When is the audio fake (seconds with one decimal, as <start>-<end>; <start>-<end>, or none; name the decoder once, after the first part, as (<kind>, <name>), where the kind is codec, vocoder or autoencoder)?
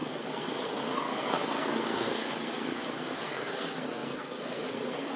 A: 0.0-5.2 (codec, SNAC)